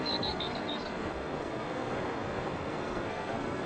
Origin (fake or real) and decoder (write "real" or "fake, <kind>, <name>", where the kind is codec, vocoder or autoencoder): fake, codec, SNAC